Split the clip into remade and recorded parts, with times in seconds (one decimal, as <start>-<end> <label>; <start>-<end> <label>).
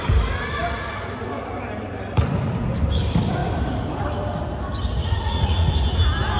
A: 0.0-5.0 recorded; 5.0-5.7 remade; 5.7-6.4 recorded